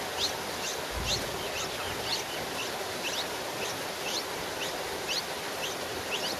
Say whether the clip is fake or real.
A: real